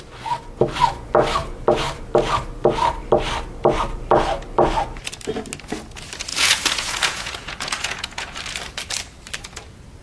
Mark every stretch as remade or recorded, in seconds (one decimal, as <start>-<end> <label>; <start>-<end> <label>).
0.0-6.3 recorded; 6.3-8.4 remade; 8.4-10.0 recorded

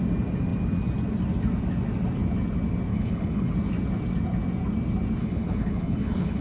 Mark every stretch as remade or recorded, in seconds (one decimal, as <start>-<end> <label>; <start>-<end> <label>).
0.0-2.9 recorded; 2.9-3.5 remade; 3.5-5.2 recorded; 5.2-6.4 remade

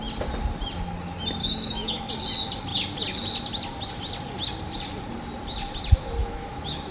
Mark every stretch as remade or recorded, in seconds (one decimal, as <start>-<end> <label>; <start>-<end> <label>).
0.0-1.4 recorded; 1.4-2.1 remade; 2.1-6.2 recorded; 6.2-6.9 remade

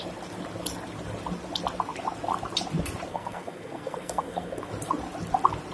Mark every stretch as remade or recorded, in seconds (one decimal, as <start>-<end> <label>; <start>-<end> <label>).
0.0-3.1 recorded; 3.1-4.7 remade; 4.7-5.7 recorded

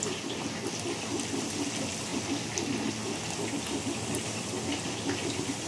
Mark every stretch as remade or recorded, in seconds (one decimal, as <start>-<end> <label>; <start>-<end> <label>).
0.0-5.7 recorded